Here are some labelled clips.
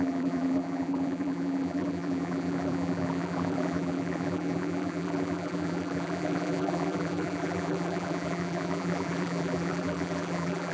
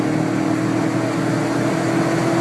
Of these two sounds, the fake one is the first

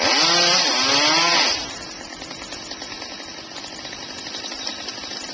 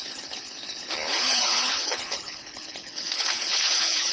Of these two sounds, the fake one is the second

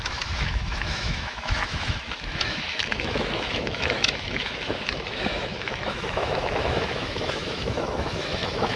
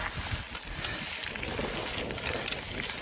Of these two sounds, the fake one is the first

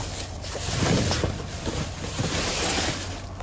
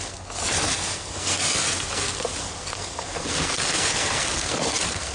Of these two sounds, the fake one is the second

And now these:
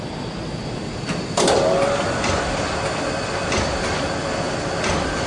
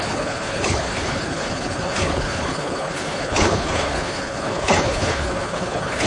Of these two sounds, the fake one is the second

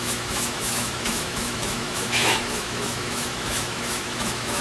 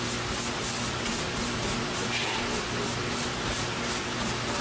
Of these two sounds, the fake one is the first